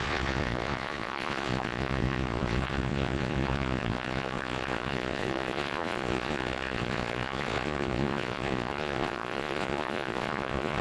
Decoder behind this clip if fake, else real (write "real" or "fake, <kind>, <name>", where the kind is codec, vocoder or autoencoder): fake, vocoder, Vocos